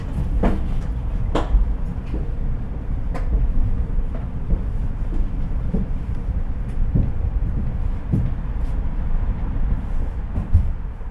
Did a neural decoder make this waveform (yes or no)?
yes